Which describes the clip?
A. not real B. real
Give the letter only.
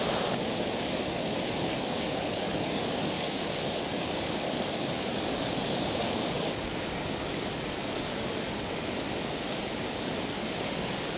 A